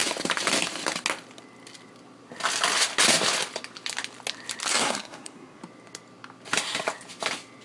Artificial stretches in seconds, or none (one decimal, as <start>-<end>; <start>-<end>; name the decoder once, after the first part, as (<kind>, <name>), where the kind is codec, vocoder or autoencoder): 4.7-5.6 (codec, SNAC)